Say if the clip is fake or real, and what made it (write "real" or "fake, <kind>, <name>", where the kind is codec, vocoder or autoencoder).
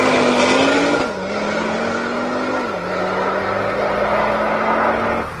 real